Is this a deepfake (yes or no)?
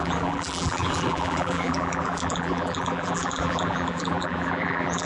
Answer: yes